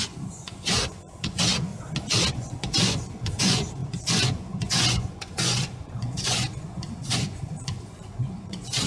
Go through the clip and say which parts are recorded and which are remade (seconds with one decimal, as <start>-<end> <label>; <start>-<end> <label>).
0.0-1.7 remade; 1.7-2.3 recorded; 2.3-8.9 remade